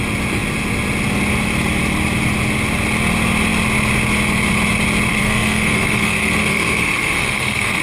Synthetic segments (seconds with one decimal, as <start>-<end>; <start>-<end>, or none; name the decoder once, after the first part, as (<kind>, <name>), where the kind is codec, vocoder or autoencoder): 5.1-7.8 (codec, SNAC)